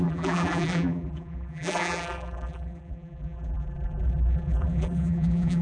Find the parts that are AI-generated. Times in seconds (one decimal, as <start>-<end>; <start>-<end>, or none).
0.0-5.6